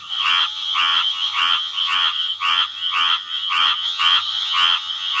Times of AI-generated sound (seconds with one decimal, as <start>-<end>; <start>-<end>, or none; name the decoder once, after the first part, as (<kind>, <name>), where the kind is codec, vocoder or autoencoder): 0.0-5.2 (vocoder, HiFi-GAN)